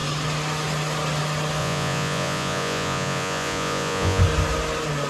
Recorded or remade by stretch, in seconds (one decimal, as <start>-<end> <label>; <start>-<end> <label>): 0.0-1.6 recorded; 1.6-4.2 remade; 4.2-5.1 recorded